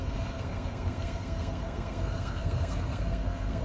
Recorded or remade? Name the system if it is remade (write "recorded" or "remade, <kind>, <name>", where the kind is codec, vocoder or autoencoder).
remade, codec, SNAC